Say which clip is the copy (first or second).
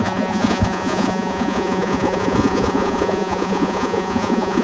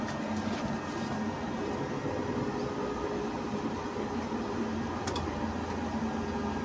first